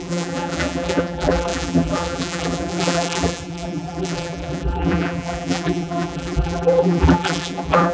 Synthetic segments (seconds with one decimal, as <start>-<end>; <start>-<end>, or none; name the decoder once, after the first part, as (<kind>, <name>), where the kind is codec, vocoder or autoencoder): 0.0-7.9 (vocoder, BigVGAN v2)